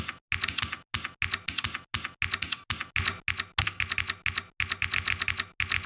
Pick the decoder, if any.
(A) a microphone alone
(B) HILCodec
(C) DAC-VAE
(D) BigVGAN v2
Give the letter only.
A